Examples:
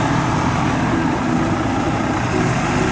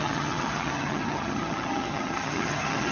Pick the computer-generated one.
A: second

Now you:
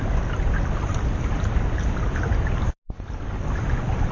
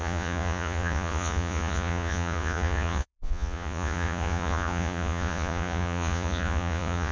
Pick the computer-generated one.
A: second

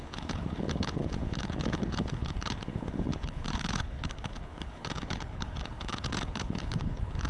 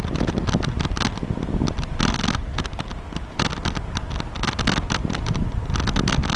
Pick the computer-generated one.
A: first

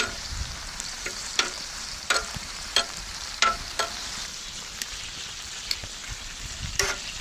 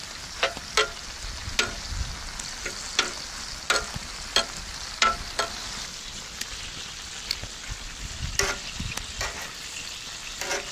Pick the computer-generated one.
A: first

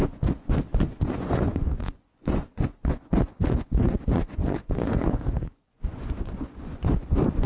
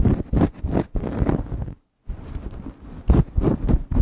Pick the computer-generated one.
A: first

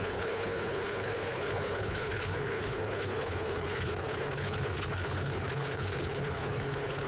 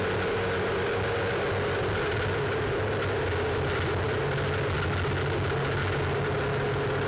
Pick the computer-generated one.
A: first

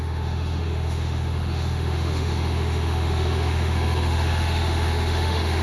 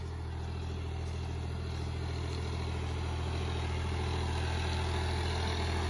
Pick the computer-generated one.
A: first